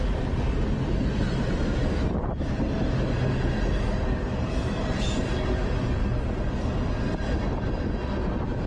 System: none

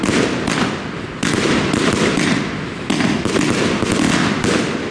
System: none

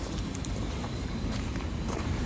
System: vocoder, BigVGAN v2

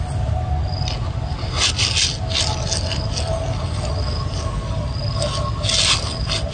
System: none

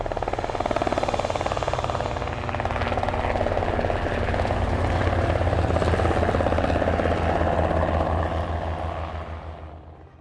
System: none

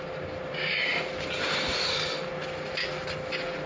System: none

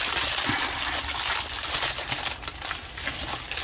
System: none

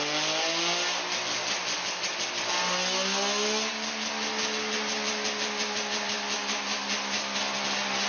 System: none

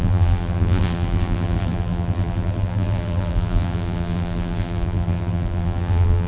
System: vocoder, BigVGAN v2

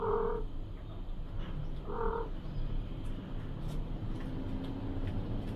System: none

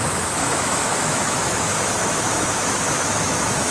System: autoencoder, DAC-VAE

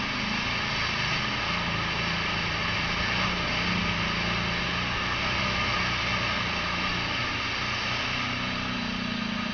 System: none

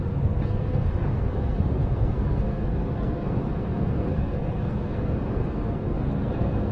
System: codec, SNAC